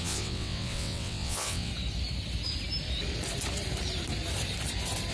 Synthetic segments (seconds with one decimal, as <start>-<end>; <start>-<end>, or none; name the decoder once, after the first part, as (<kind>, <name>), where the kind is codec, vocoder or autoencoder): 0.0-1.7 (vocoder, WaveNeXt)